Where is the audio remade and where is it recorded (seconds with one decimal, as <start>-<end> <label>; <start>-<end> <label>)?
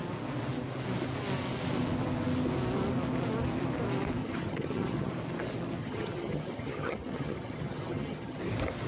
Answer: 0.0-4.2 recorded; 4.2-5.1 remade; 5.1-5.8 recorded; 5.8-8.4 remade; 8.4-8.9 recorded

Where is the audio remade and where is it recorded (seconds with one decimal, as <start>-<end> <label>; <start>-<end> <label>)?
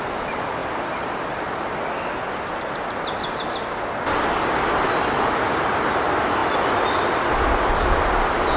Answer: 0.0-8.6 recorded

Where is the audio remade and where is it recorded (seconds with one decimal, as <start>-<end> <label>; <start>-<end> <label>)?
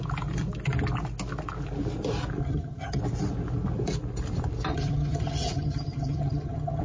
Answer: 0.0-2.4 recorded; 2.4-3.0 remade; 3.0-4.7 recorded; 4.7-6.8 remade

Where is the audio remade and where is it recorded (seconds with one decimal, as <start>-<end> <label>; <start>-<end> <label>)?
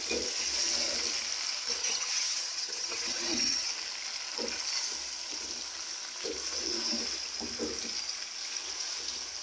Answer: 0.0-1.8 recorded; 1.8-3.7 remade; 3.7-9.4 recorded